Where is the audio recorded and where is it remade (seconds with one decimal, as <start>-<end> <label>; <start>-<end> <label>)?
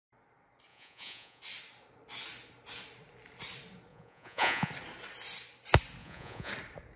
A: 0.0-0.7 recorded; 0.7-1.4 remade; 1.4-3.9 recorded; 3.9-4.7 remade; 4.7-6.0 recorded; 6.0-6.5 remade; 6.5-7.0 recorded